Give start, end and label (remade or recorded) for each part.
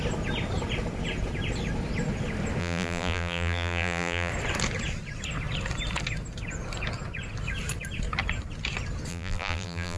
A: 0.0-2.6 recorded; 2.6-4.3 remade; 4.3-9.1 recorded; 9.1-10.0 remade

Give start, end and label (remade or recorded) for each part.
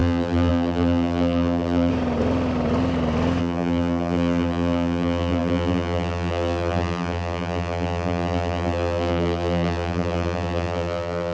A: 0.0-1.9 remade; 1.9-3.4 recorded; 3.4-11.3 remade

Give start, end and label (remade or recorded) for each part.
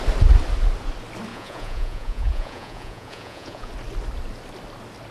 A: 0.0-1.3 recorded; 1.3-3.7 remade; 3.7-5.1 recorded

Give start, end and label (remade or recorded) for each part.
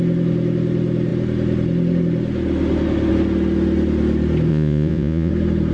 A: 0.0-4.5 recorded; 4.5-5.3 remade; 5.3-5.7 recorded